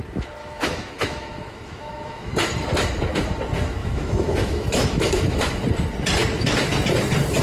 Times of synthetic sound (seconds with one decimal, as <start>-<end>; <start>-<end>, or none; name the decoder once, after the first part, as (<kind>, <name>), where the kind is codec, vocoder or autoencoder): 0.4-2.3 (autoencoder, DAC-VAE); 3.8-5.6